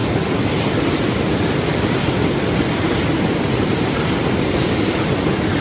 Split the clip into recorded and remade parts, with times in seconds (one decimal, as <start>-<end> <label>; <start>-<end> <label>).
0.0-5.6 recorded